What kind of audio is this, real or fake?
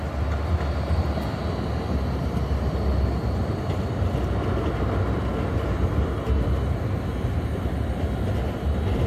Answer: real